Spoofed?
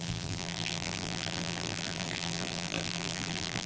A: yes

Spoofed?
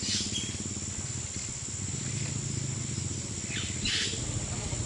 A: no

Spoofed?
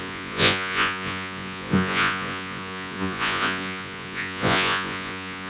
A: yes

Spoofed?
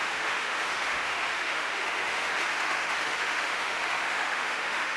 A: yes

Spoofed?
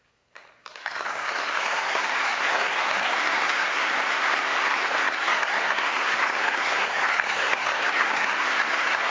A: yes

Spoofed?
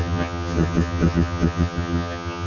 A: yes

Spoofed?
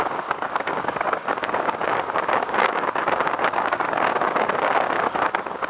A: yes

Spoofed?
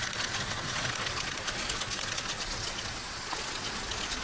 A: yes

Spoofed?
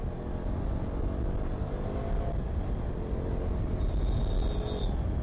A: no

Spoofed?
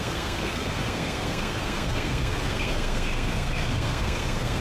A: yes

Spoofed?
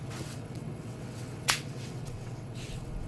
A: yes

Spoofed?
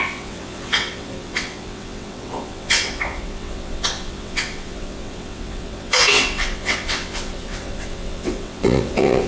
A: yes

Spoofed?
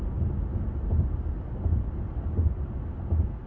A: no